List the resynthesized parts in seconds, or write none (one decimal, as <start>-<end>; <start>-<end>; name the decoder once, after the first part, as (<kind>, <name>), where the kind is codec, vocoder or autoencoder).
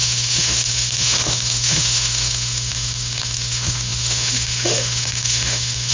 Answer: 0.0-5.9 (autoencoder, DAC-VAE)